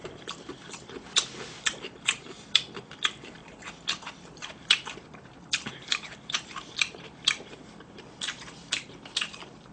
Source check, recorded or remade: remade